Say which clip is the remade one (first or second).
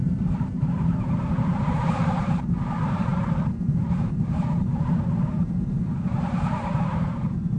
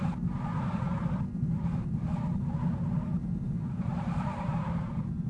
first